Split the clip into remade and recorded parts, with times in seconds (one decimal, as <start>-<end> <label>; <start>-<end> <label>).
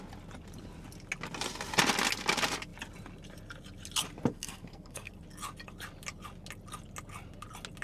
0.0-4.3 recorded; 4.3-5.1 remade; 5.1-7.8 recorded